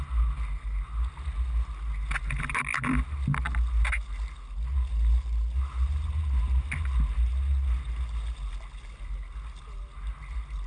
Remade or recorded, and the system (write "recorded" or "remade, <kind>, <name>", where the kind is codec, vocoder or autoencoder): recorded